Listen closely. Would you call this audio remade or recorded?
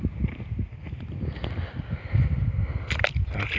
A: recorded